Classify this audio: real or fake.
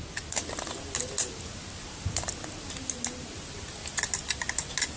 real